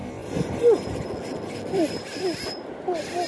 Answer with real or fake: real